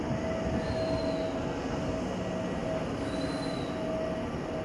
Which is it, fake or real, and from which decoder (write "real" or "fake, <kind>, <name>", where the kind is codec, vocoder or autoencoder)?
real